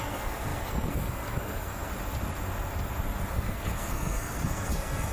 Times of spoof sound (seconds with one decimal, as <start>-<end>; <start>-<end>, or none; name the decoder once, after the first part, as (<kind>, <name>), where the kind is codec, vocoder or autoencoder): 0.0-1.9 (codec, SNAC); 3.3-5.1